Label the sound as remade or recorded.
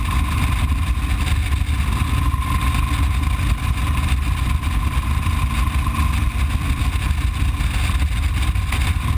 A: recorded